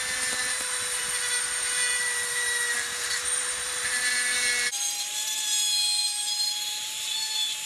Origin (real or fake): fake